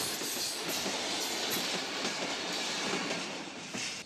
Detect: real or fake real